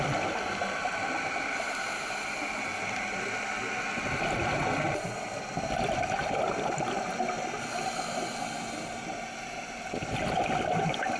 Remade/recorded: recorded